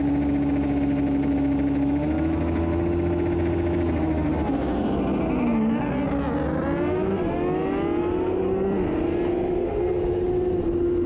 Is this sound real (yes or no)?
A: yes